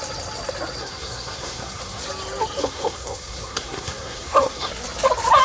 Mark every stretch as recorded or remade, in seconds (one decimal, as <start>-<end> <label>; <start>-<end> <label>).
0.0-0.8 recorded; 0.8-2.0 remade; 2.0-2.6 recorded; 2.6-4.7 remade; 4.7-5.4 recorded